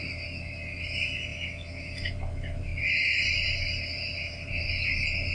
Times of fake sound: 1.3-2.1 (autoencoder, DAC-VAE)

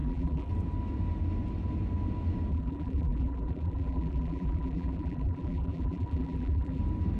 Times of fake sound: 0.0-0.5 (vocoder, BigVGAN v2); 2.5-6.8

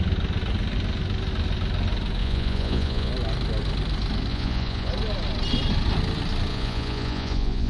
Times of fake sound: 2.2-3.1 (vocoder, Vocos); 4.3-4.9; 6.5-7.7

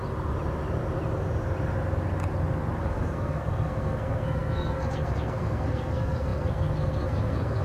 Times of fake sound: 2.8-7.6 (codec, SNAC)

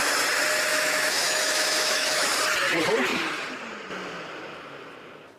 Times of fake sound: 0.7-2.3 (autoencoder, DAC-VAE)